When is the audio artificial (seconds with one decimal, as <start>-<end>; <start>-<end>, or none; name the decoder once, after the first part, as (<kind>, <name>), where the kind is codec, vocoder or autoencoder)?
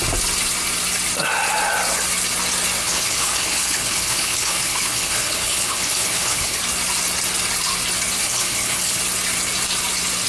2.8-6.6 (codec, HILCodec); 8.2-9.0